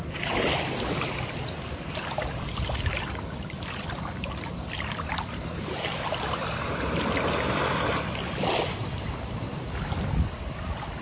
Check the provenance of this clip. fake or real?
fake